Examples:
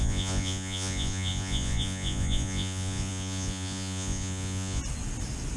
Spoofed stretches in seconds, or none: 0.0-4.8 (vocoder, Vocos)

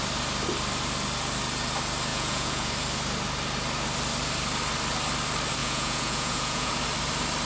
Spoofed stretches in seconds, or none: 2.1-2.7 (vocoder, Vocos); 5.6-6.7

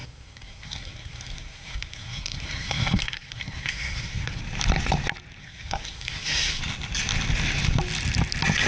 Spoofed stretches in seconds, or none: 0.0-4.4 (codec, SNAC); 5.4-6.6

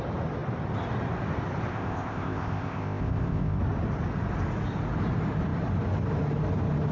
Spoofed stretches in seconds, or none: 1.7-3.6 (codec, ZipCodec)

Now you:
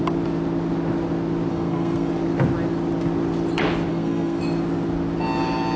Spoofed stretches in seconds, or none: 1.5-2.1 (codec, SNAC); 3.9-4.4

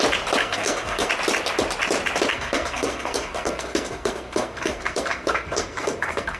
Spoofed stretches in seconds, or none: 0.4-1.1 (codec, SNAC); 2.3-6.4

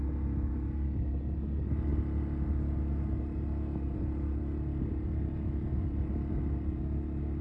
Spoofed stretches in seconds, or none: none

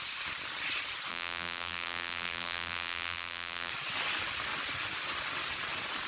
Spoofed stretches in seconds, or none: 1.1-3.7 (vocoder, BigVGAN v2)